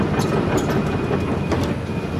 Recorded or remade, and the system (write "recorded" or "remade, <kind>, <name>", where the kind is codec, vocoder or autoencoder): recorded